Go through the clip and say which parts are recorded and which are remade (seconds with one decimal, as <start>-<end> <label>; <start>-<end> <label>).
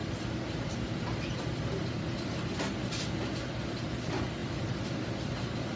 0.0-1.0 remade; 1.0-4.4 recorded; 4.4-5.1 remade; 5.1-5.8 recorded